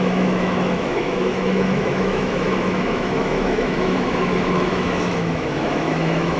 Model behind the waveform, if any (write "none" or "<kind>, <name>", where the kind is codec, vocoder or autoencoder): autoencoder, DAC-VAE